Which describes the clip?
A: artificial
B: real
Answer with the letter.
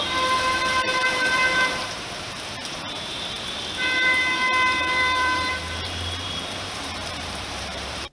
A